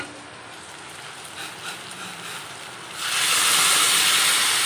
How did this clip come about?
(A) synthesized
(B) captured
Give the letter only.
B